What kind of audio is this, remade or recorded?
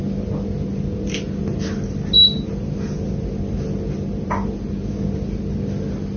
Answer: recorded